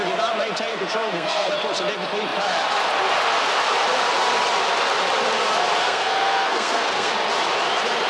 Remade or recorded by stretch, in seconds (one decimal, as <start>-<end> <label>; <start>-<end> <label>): 0.0-0.7 recorded; 0.7-1.5 remade; 1.5-5.8 recorded; 5.8-7.1 remade; 7.1-8.1 recorded